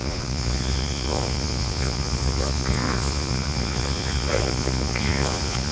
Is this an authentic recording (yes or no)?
no